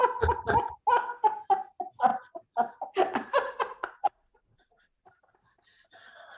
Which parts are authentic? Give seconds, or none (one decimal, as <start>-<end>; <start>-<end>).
0.0-3.3; 5.0-6.4